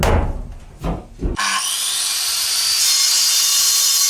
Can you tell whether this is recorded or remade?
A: recorded